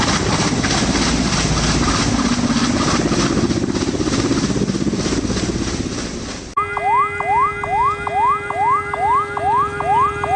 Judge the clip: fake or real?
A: real